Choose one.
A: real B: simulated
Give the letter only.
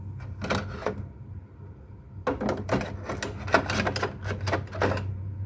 A